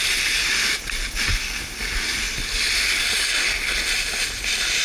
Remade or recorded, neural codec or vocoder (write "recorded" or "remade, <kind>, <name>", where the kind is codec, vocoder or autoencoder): recorded